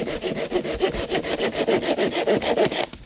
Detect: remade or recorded recorded